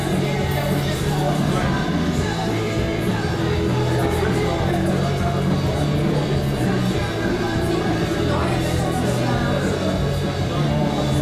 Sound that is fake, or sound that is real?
real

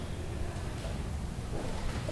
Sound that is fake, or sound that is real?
real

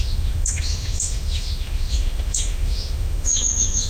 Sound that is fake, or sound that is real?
fake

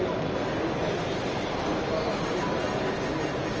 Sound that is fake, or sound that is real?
real